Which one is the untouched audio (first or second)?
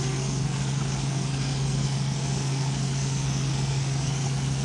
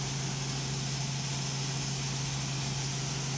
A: second